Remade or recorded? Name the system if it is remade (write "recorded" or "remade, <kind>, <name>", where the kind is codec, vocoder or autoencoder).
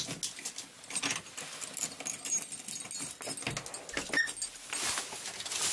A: recorded